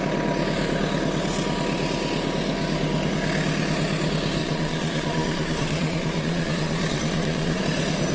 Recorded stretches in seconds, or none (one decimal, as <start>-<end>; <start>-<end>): 0.0-4.4; 7.6-8.1